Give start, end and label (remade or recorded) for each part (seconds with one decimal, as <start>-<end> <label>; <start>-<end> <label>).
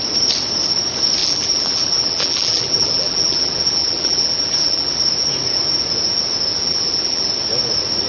0.0-1.2 recorded; 1.2-5.0 remade; 5.0-6.5 recorded; 6.5-7.3 remade; 7.3-8.1 recorded